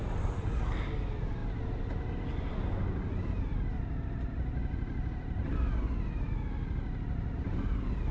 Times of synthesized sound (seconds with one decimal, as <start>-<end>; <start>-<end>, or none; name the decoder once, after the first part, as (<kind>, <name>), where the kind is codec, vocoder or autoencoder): none